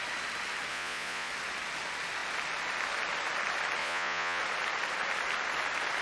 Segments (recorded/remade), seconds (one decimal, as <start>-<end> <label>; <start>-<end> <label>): 0.0-0.7 recorded; 0.7-1.3 remade; 1.3-3.8 recorded; 3.8-4.4 remade; 4.4-6.0 recorded